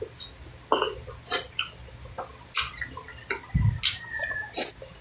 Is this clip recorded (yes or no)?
yes